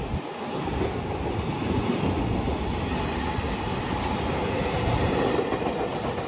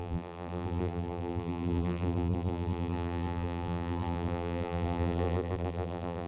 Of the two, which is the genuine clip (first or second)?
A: first